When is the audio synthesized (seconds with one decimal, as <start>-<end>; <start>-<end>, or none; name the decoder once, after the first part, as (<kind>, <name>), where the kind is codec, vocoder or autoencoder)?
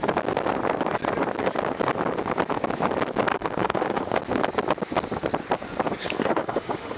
3.3-4.2 (autoencoder, DAC-VAE); 6.0-7.0